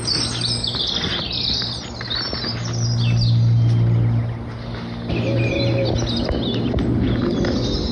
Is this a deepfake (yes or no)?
no